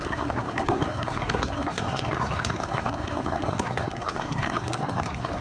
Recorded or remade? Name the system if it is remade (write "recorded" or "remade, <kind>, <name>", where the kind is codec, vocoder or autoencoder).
remade, codec, SNAC